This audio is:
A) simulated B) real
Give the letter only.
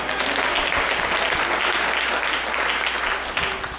B